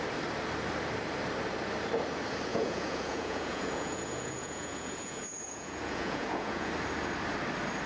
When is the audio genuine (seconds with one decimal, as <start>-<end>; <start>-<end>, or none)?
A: 0.0-2.5; 6.7-7.9